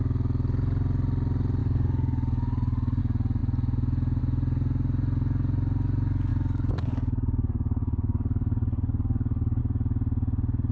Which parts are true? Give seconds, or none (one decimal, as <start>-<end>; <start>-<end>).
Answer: 0.0-1.6; 3.0-6.3; 9.6-10.7